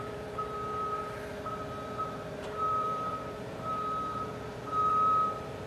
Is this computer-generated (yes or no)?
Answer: yes